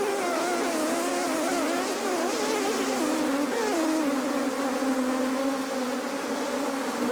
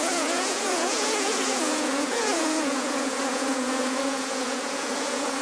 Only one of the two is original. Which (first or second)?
first